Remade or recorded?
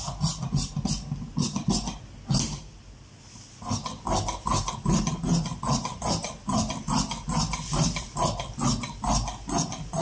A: recorded